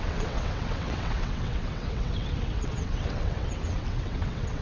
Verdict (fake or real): fake